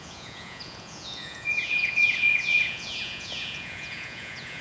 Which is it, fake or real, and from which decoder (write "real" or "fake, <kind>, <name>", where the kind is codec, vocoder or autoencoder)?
fake, vocoder, Vocos